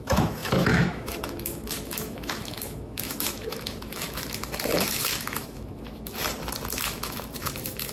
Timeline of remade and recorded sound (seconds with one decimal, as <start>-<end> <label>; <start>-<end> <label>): 0.0-6.2 remade; 6.2-6.8 recorded; 6.8-7.9 remade